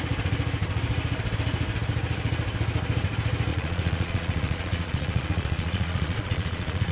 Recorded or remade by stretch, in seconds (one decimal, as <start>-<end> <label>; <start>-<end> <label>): 0.0-3.5 recorded; 3.5-6.9 remade